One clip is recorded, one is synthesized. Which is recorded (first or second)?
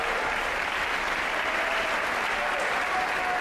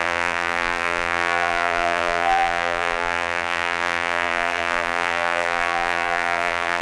first